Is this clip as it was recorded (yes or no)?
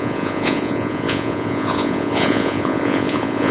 no